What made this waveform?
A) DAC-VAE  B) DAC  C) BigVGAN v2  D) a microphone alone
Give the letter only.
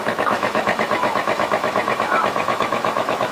A